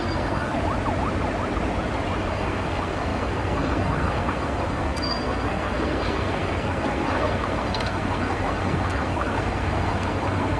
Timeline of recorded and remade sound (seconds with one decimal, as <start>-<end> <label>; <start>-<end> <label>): 0.0-0.5 remade; 0.5-2.3 recorded; 2.3-10.6 remade